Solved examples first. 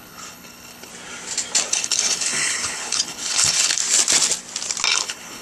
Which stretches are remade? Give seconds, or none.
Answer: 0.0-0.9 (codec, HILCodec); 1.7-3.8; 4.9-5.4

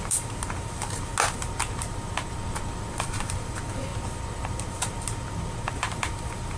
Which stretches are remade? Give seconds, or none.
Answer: 0.0-1.1 (vocoder, BigVGAN v2); 2.9-3.9; 4.5-6.6

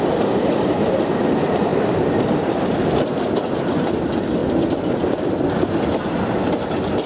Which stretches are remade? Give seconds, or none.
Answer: none

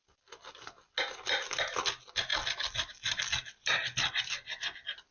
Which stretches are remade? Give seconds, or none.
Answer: none

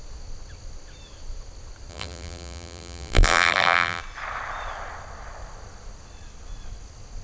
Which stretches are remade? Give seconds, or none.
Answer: 1.9-4.0 (vocoder, BigVGAN v2)

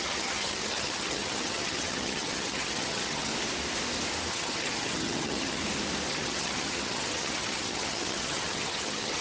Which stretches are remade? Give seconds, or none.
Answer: 0.0-3.3 (vocoder, HiFi-GAN); 4.3-5.6; 6.1-9.2

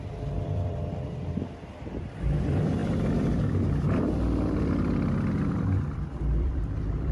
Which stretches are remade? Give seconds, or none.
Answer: 0.0-7.1 (vocoder, BigVGAN v2)